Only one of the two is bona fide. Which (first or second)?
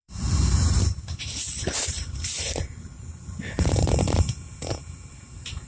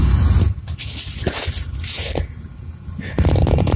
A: second